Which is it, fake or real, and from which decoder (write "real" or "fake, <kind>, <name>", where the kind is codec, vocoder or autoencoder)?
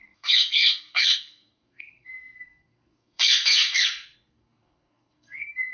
fake, codec, SNAC